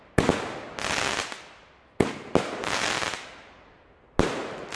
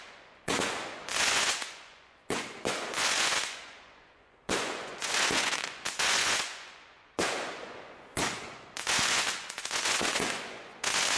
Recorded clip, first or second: first